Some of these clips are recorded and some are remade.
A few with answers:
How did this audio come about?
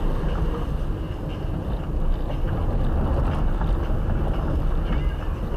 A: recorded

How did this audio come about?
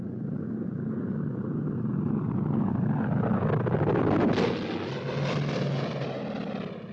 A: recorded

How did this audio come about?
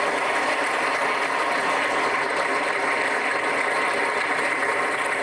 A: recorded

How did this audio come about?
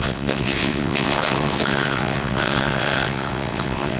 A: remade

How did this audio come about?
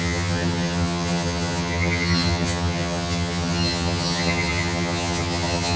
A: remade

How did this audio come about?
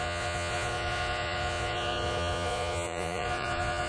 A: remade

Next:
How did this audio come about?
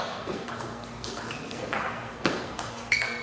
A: remade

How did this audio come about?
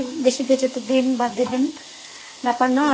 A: remade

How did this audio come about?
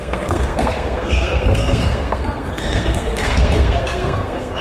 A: remade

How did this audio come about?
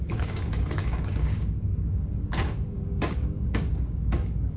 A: remade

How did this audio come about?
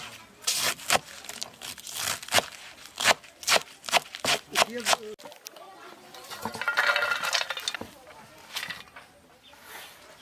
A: recorded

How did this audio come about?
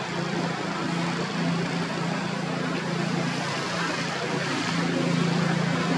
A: recorded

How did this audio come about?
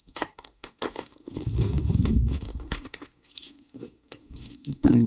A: remade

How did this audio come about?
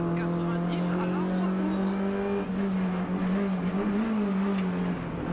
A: recorded